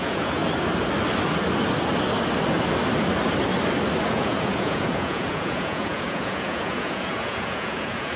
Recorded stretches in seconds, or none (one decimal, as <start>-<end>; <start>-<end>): 0.4-4.1